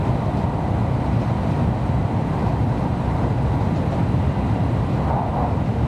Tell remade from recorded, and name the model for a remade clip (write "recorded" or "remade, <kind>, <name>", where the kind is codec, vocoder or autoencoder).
recorded